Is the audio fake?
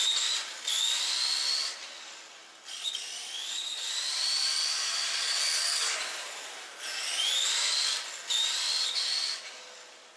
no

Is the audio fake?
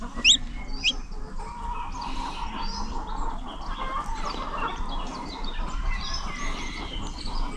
no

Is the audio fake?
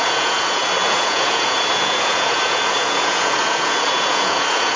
yes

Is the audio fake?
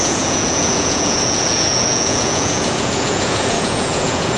yes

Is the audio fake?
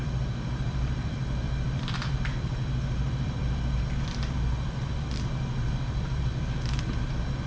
yes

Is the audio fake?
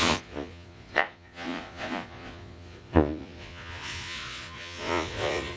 yes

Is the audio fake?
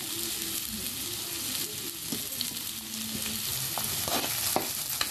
no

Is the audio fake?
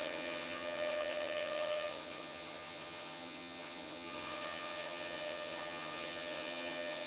yes